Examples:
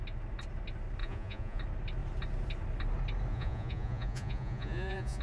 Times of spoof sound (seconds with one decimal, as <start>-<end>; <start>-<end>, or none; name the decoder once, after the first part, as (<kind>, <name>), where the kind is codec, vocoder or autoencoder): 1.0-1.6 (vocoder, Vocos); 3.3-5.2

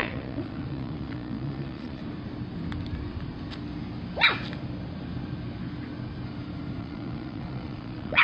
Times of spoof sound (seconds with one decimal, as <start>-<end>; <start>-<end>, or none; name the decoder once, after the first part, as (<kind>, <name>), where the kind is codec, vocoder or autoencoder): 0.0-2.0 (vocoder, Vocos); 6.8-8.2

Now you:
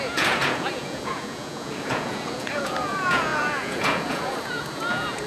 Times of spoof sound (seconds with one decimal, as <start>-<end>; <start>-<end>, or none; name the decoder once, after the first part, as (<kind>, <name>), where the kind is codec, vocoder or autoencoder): 0.0-5.3 (vocoder, Vocos)

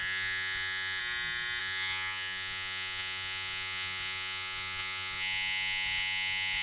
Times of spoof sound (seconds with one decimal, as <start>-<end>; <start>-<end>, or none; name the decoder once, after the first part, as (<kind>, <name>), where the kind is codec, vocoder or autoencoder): 0.0-1.0 (vocoder, Vocos); 1.6-6.6

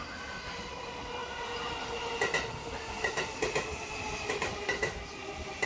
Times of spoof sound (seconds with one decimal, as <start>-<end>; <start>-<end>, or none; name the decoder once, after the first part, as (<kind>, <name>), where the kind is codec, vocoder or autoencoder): none

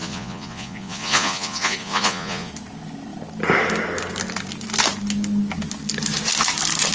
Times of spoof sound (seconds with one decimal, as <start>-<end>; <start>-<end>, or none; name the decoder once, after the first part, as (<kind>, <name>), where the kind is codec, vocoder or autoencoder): 0.0-2.5 (vocoder, Vocos)

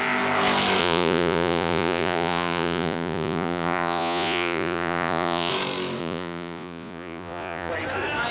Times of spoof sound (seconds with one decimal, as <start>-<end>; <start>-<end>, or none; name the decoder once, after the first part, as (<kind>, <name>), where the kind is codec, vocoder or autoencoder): 0.8-5.5 (vocoder, Vocos); 6.0-7.7

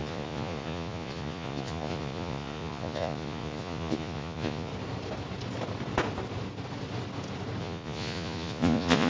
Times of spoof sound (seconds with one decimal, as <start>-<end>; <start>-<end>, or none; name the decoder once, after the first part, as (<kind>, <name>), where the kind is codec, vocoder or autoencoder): 0.0-4.7 (vocoder, Vocos); 7.6-9.1